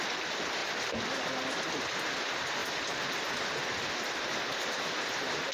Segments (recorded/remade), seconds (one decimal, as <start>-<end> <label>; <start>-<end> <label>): 0.0-5.5 recorded

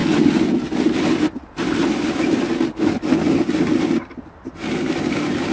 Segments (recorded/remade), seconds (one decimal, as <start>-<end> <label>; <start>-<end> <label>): 0.0-5.5 recorded